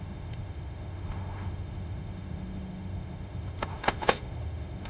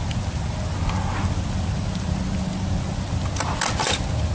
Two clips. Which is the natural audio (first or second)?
second